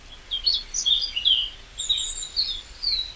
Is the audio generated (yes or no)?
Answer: no